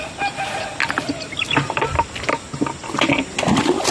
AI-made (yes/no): no